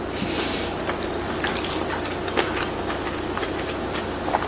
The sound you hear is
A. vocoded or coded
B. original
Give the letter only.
B